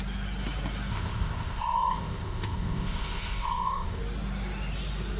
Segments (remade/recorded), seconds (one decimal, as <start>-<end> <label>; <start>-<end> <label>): 0.0-0.9 recorded; 0.9-4.0 remade; 4.0-5.2 recorded